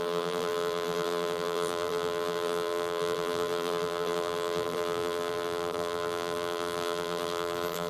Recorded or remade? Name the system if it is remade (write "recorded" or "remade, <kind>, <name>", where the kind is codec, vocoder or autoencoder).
remade, vocoder, BigVGAN v2